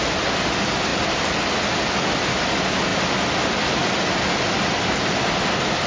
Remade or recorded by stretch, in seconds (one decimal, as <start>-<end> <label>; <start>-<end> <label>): 0.0-2.9 recorded; 2.9-4.4 remade; 4.4-5.9 recorded